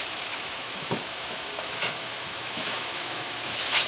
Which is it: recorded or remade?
remade